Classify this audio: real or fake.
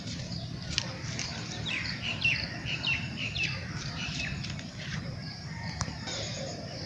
fake